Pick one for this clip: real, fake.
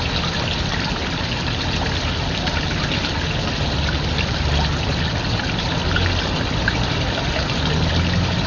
real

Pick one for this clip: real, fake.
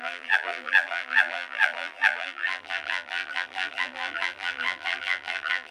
fake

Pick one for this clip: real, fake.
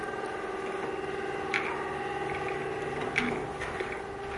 real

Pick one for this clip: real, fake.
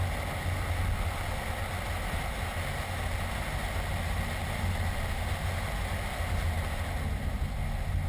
real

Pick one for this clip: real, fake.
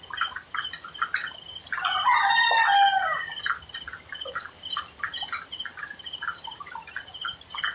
real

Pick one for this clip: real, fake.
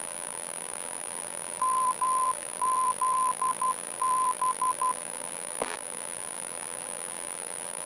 fake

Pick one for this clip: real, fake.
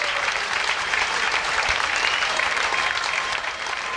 fake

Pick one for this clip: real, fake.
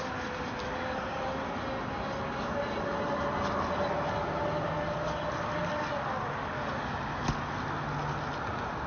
real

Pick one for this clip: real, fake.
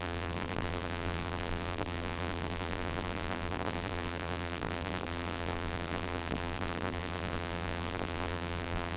fake